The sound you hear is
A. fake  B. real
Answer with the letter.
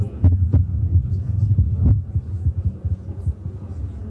A